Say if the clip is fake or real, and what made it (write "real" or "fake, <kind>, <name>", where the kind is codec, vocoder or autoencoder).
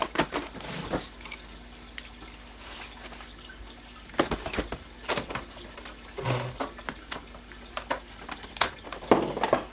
real